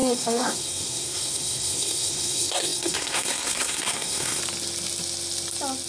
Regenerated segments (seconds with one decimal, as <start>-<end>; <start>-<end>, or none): 0.0-4.4